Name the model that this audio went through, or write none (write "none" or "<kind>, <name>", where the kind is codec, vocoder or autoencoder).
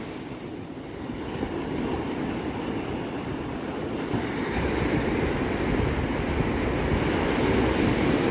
none